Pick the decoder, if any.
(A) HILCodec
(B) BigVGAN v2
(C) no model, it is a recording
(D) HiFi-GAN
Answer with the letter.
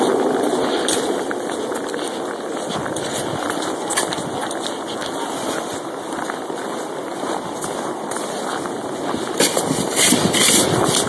C